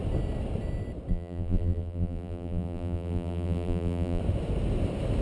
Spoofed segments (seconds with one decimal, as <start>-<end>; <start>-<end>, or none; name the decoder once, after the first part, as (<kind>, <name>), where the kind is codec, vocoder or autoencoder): 1.1-4.2 (vocoder, BigVGAN v2)